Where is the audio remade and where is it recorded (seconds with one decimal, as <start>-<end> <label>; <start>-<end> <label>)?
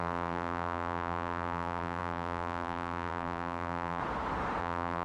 0.0-4.0 remade; 4.0-4.6 recorded; 4.6-5.0 remade